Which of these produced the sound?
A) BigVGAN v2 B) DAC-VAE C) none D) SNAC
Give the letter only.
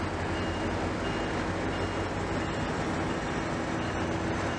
C